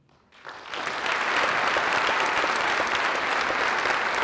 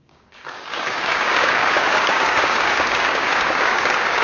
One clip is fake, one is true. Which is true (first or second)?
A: first